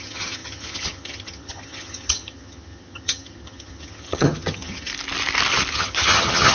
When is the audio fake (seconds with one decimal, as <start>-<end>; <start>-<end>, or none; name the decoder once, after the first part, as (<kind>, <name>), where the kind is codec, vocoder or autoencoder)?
0.0-4.9 (vocoder, HiFi-GAN); 5.7-6.5